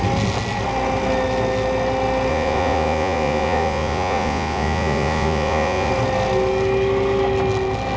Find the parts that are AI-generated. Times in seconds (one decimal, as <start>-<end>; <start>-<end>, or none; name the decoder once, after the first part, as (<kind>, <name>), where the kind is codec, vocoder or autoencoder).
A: 2.3-5.9 (vocoder, Vocos)